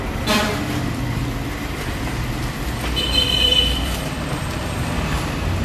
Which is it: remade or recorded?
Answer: remade